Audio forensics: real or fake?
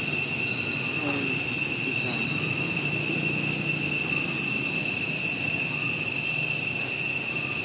real